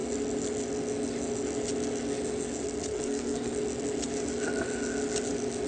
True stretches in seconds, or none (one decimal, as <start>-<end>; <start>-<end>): 0.0-2.9; 3.5-5.7